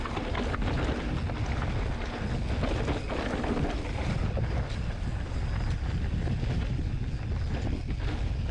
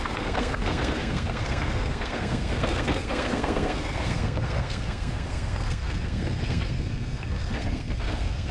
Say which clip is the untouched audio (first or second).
first